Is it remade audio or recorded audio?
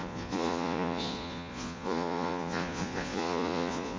remade